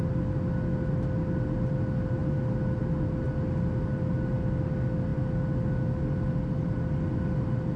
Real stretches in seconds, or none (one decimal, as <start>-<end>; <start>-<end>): 0.0-7.8